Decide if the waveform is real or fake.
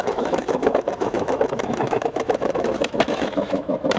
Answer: fake